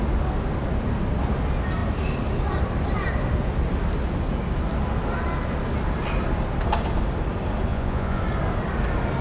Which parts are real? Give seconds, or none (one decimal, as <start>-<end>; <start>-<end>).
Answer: 0.0-7.7; 8.2-9.2